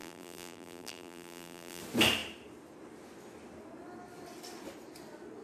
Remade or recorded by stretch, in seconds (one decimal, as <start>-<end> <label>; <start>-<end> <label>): 0.0-1.8 remade; 1.8-5.4 recorded